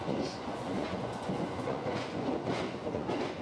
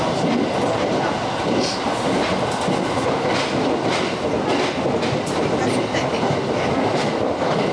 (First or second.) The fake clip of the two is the first